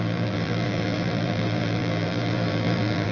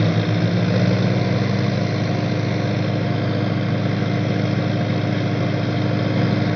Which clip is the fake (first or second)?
first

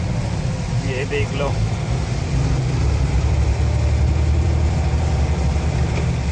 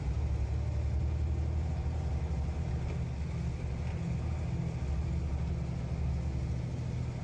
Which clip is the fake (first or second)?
first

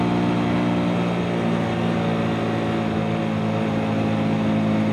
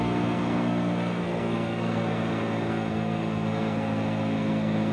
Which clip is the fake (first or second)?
second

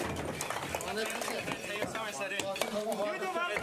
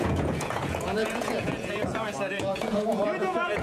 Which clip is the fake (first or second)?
second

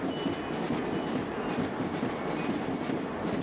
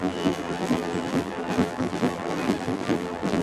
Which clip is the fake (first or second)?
second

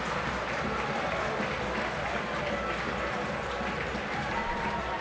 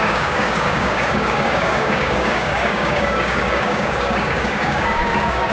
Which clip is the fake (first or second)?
second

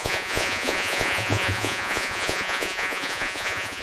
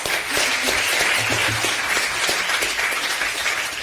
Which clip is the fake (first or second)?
first